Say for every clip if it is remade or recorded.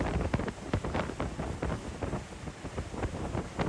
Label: recorded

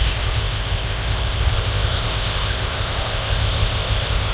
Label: remade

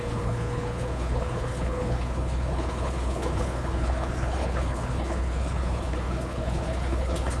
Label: remade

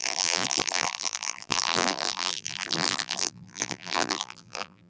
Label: remade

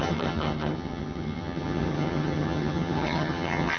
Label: remade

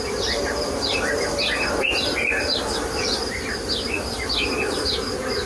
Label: recorded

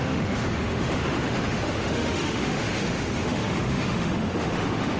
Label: remade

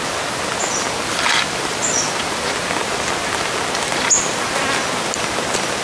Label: recorded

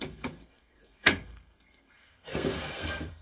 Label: remade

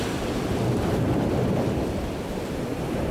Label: recorded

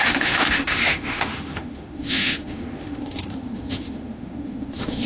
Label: remade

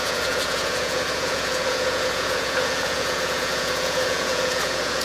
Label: remade